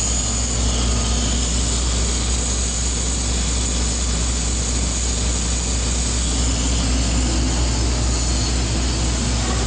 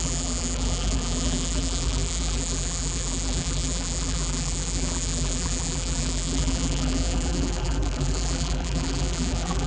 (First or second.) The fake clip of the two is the second